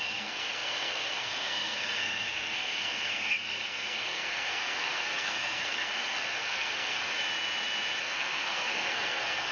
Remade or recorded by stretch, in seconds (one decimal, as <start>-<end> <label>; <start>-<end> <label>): 0.0-7.0 remade; 7.0-8.0 recorded; 8.0-9.5 remade